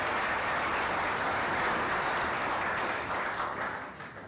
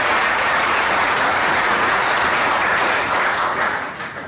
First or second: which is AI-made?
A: second